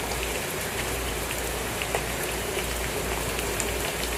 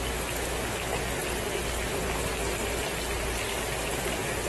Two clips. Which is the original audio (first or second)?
second